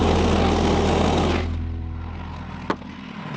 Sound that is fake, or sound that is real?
real